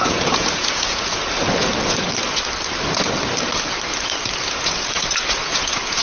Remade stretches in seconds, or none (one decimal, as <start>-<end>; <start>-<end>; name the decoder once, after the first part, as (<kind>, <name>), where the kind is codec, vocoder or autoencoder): 0.0-1.2 (vocoder, Vocos); 4.4-6.0